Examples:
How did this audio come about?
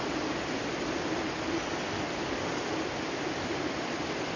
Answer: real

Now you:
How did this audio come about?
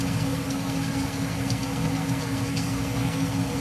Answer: fake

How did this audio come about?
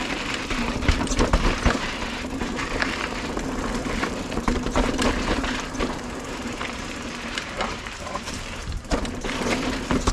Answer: fake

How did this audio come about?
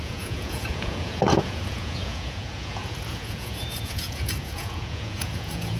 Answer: fake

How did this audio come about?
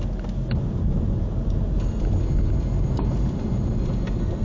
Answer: real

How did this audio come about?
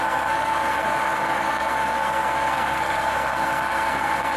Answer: fake